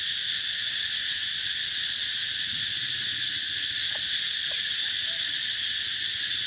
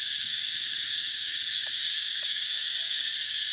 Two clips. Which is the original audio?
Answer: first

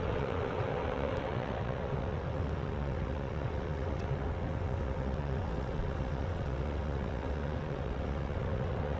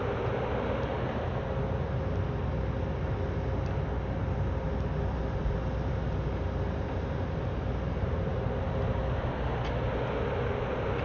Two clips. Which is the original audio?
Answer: second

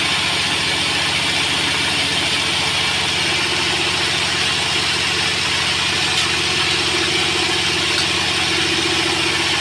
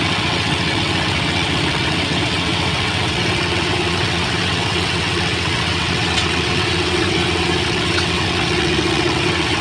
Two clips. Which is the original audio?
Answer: first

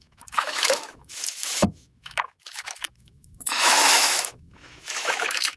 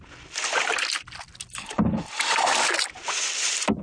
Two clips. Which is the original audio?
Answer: second